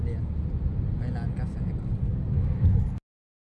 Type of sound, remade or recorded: recorded